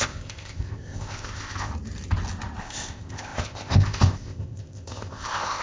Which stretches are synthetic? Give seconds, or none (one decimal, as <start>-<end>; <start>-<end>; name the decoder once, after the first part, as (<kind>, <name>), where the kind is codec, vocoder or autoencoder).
0.0-1.7 (codec, ZipCodec); 2.6-5.6